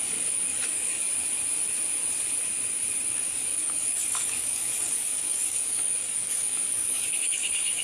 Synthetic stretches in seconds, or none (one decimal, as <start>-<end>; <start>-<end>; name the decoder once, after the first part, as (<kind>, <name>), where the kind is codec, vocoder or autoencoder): 0.0-1.1 (codec, DAC); 3.1-7.8